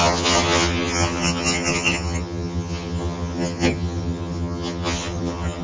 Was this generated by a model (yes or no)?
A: yes